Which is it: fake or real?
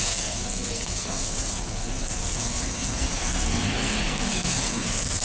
fake